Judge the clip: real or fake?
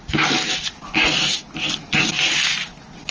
real